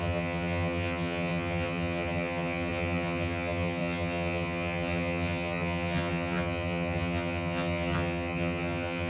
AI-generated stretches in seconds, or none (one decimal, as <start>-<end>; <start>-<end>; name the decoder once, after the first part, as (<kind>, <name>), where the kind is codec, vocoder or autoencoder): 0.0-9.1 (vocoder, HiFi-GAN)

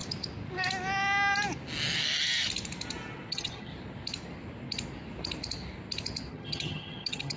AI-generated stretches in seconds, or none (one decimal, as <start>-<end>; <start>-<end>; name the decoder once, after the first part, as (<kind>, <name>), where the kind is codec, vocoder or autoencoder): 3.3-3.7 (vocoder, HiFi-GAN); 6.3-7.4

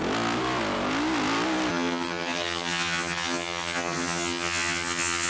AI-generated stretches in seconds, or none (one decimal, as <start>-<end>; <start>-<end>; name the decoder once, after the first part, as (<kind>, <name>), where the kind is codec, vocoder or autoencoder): 1.7-5.3 (vocoder, HiFi-GAN)

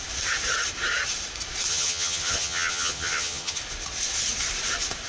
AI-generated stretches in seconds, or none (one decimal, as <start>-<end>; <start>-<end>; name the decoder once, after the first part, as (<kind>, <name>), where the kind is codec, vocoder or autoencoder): 1.7-3.6 (vocoder, HiFi-GAN)

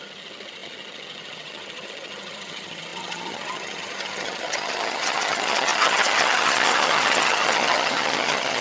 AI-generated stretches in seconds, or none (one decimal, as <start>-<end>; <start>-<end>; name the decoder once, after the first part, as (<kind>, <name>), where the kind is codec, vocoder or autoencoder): 0.0-8.6 (vocoder, HiFi-GAN)

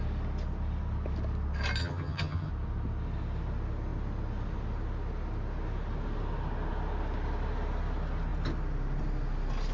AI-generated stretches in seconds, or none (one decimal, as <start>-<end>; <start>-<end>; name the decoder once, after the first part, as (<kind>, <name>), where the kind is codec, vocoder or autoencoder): 1.8-2.5 (vocoder, HiFi-GAN)